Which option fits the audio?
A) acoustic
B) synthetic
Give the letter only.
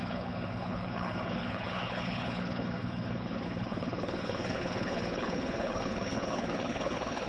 B